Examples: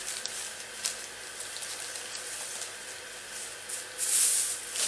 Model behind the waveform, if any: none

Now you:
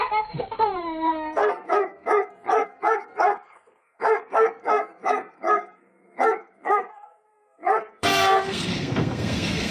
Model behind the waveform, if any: codec, SNAC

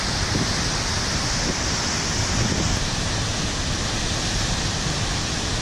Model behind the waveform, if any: none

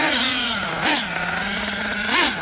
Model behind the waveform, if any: vocoder, Vocos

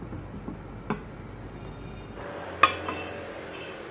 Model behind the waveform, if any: none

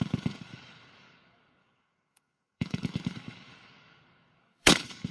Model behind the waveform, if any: codec, DAC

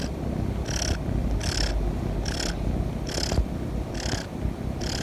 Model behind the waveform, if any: none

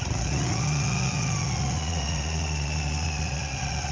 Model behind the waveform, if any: vocoder, Vocos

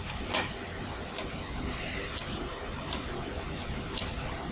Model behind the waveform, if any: none